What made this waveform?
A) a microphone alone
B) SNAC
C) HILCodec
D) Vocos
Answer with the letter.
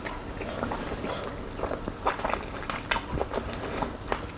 A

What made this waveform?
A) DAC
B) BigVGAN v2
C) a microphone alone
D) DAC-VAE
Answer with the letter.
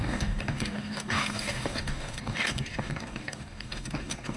A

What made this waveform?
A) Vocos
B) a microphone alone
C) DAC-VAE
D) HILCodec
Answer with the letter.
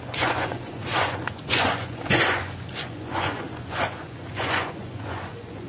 A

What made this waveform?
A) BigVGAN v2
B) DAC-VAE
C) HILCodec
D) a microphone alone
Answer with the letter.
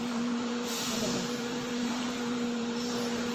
A